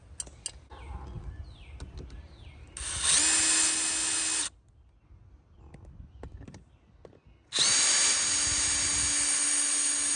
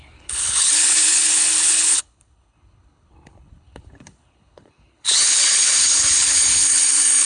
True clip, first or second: first